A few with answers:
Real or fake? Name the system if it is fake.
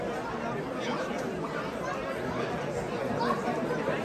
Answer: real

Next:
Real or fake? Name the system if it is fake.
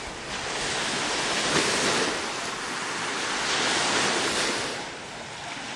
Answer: real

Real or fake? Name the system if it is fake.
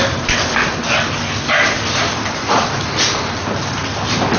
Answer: real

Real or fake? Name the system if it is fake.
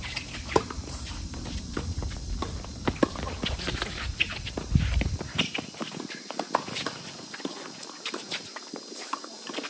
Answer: real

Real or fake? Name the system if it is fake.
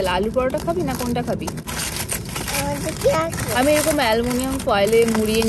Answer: real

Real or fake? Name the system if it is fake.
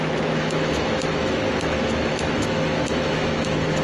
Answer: fake, autoencoder, DAC-VAE